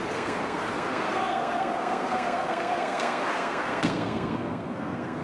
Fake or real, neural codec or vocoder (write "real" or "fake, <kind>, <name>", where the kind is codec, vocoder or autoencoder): fake, codec, SNAC